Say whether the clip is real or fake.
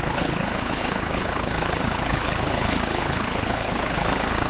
fake